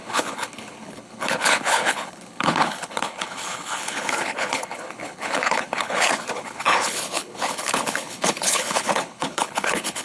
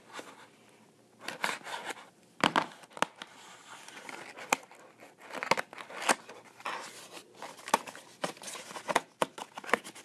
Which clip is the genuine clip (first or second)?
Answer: second